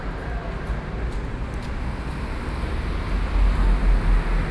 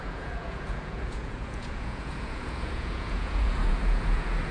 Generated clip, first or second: second